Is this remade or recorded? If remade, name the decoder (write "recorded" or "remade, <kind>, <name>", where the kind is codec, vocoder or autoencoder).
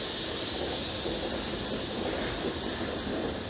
recorded